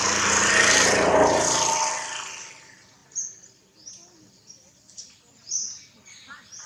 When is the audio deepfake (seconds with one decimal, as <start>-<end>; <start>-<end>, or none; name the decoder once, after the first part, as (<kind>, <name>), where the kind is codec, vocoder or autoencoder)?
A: none